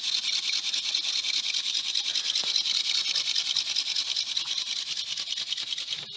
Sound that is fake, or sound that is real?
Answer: real